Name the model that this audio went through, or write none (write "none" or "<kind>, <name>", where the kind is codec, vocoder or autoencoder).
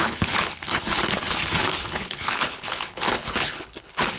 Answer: codec, HILCodec